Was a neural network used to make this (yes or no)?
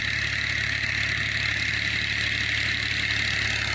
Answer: no